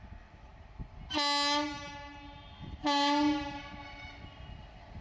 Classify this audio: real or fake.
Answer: real